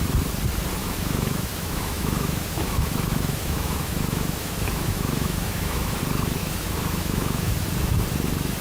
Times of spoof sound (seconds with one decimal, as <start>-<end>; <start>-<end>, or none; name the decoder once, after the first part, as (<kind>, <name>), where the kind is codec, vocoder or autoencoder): 0.8-6.0 (autoencoder, DAC-VAE); 6.4-7.5